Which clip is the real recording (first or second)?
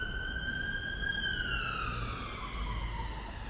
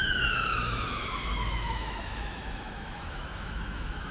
first